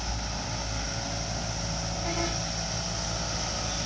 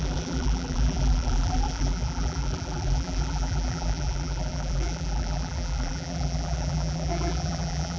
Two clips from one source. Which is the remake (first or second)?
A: second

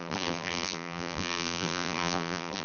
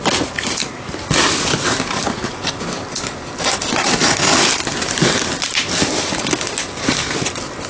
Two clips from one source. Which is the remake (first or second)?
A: first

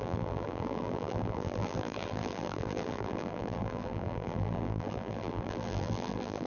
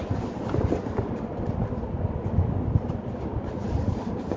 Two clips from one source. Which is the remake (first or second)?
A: first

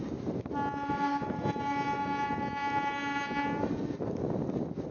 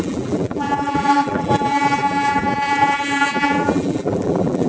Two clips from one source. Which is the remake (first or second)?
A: second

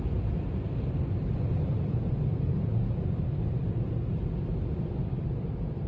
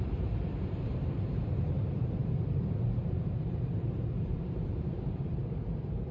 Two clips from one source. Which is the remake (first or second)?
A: second